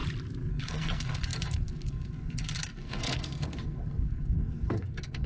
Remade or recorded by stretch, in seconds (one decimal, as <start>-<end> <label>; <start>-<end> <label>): 0.0-0.5 recorded; 0.5-5.3 remade